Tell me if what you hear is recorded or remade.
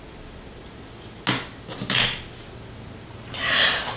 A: recorded